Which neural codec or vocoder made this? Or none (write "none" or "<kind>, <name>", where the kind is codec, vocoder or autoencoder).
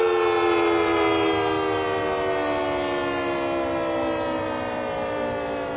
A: none